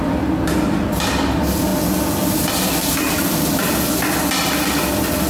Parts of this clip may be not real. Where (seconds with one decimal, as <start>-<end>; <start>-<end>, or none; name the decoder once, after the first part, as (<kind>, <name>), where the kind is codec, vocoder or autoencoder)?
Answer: none